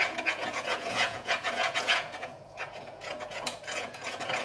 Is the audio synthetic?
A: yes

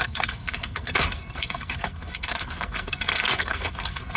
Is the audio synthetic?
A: yes